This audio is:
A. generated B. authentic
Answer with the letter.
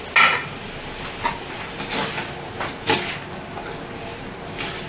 B